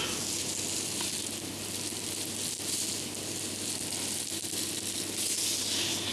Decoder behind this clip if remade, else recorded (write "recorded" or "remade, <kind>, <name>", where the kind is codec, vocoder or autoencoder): recorded